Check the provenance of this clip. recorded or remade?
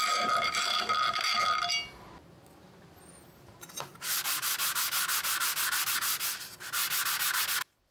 recorded